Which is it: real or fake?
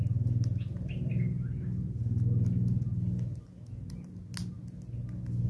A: real